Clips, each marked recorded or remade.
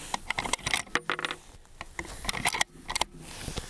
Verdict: recorded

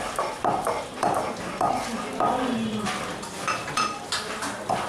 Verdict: recorded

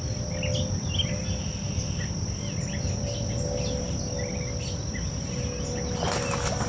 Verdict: recorded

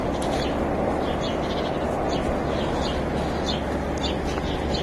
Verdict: recorded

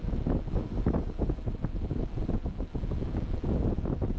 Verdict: recorded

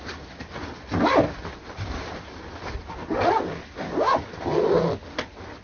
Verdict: recorded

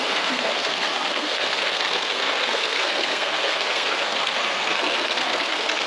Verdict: remade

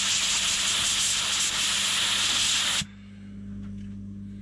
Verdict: recorded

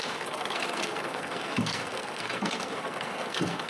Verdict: remade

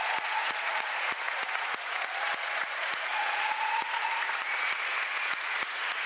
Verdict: remade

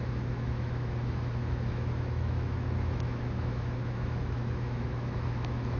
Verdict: remade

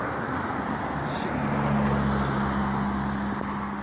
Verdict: recorded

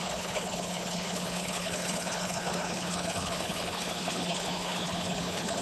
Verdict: remade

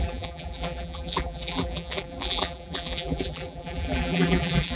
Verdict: remade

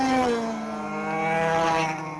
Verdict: recorded